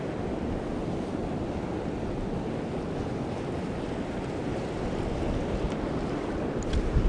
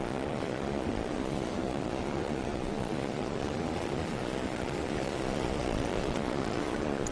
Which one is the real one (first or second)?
first